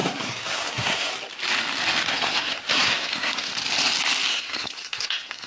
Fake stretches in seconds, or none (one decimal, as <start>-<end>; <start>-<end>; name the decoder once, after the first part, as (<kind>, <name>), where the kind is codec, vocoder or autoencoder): 0.0-1.1 (codec, SNAC); 2.1-3.5; 4.3-5.5